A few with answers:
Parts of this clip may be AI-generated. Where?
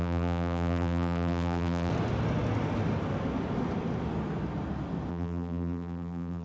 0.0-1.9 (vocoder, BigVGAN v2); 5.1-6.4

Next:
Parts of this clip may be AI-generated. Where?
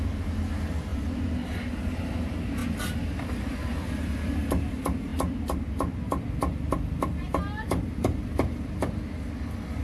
0.9-2.1 (vocoder, BigVGAN v2)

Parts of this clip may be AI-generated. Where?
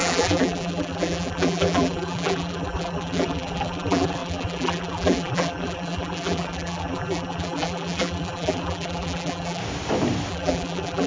0.0-9.6 (vocoder, BigVGAN v2); 10.3-11.1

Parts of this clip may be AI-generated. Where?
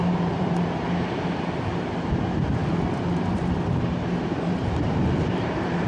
0.0-5.9 (vocoder, BigVGAN v2)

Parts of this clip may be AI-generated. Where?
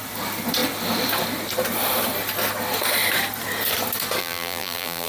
4.2-5.1 (vocoder, BigVGAN v2)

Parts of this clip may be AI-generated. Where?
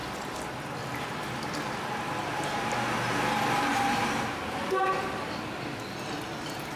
none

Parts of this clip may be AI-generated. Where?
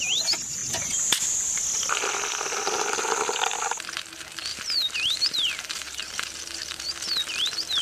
4.5-7.1 (vocoder, BigVGAN v2)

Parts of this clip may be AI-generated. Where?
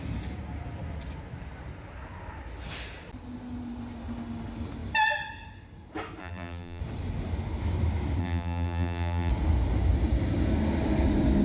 6.2-6.8 (vocoder, BigVGAN v2); 8.2-9.3